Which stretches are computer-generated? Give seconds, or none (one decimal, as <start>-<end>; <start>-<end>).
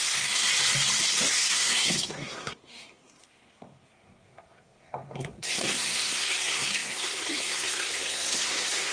0.0-0.5; 1.3-8.9